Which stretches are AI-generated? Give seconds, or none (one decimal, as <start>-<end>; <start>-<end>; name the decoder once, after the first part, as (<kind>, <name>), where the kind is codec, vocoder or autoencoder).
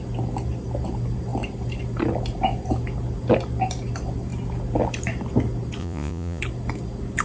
5.8-6.4 (vocoder, Vocos)